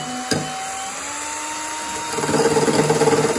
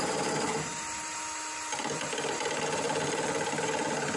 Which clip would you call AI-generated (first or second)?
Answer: second